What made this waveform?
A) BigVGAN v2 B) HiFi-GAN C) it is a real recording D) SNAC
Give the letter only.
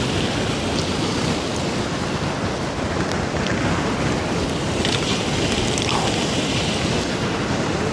C